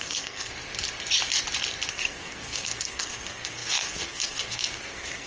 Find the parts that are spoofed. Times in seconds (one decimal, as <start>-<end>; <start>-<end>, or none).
0.0-0.5; 1.9-5.3